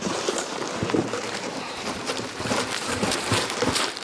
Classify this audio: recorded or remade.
remade